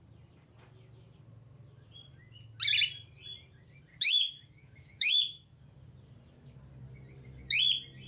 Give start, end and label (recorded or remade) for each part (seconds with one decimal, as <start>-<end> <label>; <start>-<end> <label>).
0.0-3.9 recorded; 3.9-5.6 remade; 5.6-8.1 recorded